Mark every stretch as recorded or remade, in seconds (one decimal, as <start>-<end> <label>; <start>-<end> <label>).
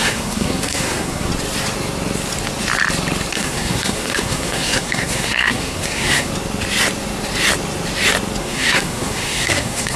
0.0-1.3 remade; 1.3-3.3 recorded; 3.3-6.3 remade; 6.3-8.4 recorded; 8.4-10.0 remade